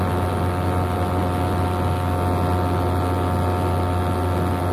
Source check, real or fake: real